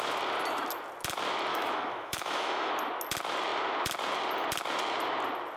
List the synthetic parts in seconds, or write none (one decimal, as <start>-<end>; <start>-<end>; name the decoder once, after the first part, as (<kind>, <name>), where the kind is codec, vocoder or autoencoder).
1.5-2.7 (autoencoder, DAC-VAE)